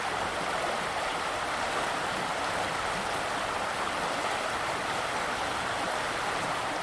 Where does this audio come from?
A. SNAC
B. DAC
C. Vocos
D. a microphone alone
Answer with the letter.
D